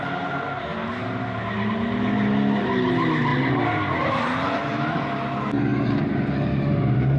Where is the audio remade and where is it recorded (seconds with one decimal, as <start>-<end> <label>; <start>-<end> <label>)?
0.0-7.2 recorded